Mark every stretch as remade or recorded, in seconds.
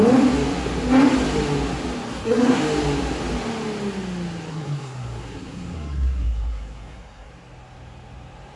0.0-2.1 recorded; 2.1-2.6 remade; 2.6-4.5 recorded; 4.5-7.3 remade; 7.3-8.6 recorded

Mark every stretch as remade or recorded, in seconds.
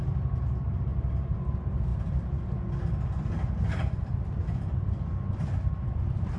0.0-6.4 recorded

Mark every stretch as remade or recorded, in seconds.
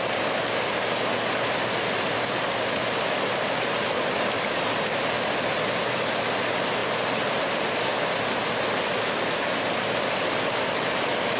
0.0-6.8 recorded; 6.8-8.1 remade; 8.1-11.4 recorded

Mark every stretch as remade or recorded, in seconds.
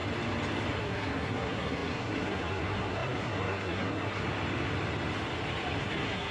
0.0-0.8 recorded; 0.8-4.2 remade; 4.2-5.8 recorded; 5.8-6.3 remade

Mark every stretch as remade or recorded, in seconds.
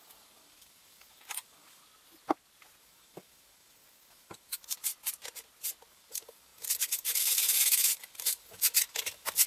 0.0-1.8 remade; 1.8-2.8 recorded; 2.8-4.8 remade; 4.8-5.9 recorded; 5.9-9.5 remade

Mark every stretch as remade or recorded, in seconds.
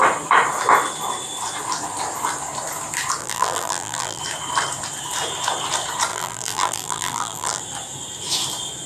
0.0-3.2 recorded; 3.2-4.2 remade; 4.2-6.1 recorded; 6.1-7.6 remade; 7.6-8.9 recorded